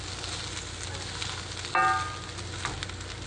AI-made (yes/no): no